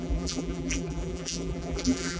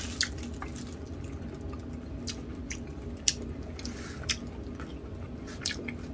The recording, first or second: second